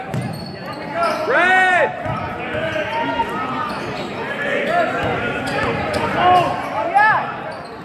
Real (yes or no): yes